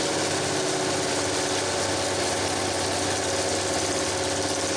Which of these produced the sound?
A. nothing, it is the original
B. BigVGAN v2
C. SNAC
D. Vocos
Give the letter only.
A